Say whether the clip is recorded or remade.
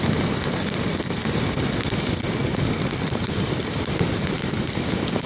recorded